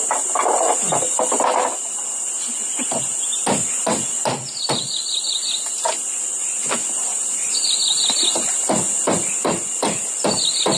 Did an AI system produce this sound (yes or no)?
no